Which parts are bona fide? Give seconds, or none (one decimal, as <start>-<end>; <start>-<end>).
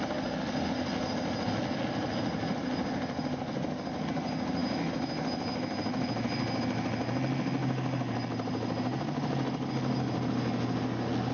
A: 0.0-11.3